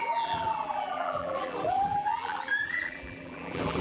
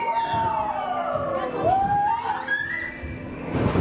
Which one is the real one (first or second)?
second